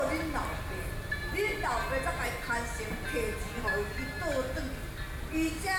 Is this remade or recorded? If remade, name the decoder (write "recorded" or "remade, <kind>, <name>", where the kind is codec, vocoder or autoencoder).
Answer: recorded